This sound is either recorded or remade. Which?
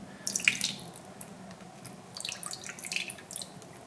recorded